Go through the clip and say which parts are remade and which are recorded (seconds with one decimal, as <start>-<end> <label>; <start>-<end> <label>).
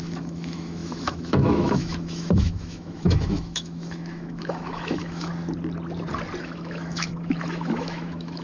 0.0-5.3 remade; 5.3-6.4 recorded; 6.4-8.4 remade